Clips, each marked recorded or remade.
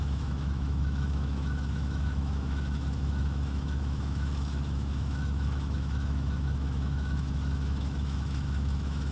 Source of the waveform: remade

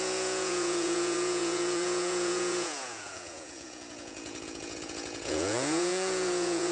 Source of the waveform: remade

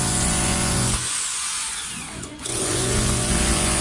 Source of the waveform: remade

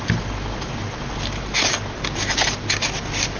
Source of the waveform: recorded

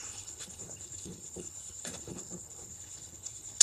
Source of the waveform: remade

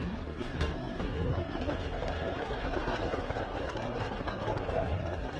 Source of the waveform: remade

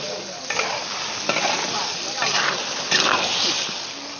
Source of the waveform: recorded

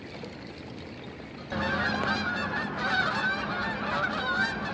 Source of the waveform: recorded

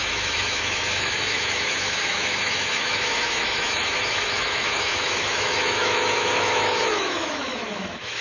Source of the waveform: remade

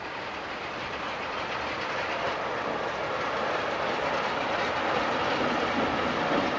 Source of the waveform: recorded